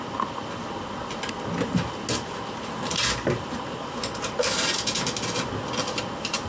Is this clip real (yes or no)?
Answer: yes